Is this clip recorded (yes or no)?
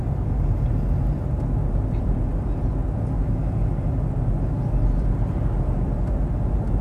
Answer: yes